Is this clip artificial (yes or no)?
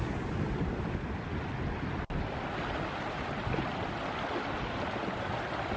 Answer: no